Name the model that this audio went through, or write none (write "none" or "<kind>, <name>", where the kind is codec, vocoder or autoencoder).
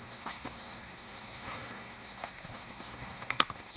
codec, SNAC